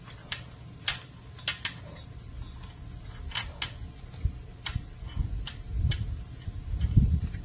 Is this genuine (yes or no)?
yes